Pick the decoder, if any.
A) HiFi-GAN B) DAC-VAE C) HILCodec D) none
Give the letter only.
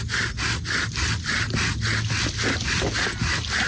D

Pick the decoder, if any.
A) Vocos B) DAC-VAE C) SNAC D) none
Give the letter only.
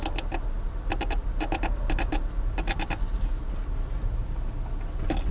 D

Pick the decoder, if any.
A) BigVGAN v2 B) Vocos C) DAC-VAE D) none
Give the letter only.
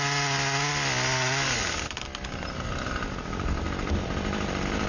D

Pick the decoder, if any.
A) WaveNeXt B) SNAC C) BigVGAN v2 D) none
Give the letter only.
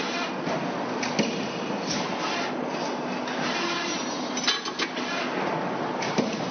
D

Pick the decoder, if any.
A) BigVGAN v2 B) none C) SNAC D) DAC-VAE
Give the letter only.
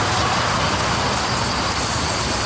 B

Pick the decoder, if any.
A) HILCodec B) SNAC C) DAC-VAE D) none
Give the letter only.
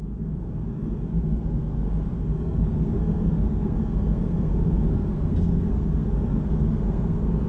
B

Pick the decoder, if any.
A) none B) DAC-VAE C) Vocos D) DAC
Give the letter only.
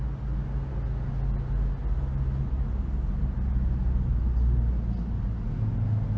A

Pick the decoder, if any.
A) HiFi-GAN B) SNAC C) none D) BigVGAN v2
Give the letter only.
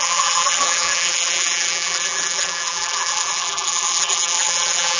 D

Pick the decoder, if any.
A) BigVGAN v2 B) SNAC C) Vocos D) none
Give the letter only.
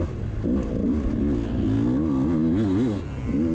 D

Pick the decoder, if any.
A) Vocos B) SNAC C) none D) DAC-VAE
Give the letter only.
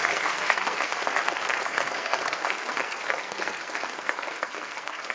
B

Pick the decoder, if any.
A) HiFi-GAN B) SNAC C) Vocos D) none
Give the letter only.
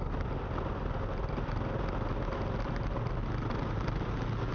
D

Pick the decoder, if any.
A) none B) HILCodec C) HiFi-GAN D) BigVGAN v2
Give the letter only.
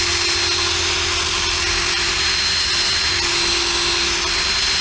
A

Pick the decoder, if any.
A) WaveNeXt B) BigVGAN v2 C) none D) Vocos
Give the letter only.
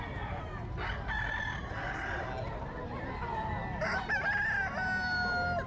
C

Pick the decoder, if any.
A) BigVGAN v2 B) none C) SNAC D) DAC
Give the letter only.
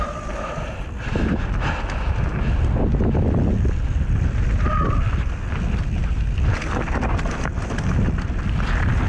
B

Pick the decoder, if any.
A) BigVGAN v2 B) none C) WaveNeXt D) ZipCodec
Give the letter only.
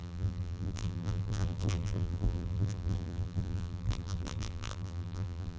A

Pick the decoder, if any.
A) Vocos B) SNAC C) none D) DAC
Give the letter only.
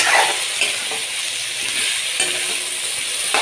C